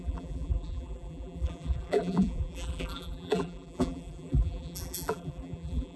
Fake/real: fake